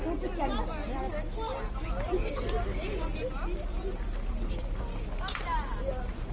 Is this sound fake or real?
real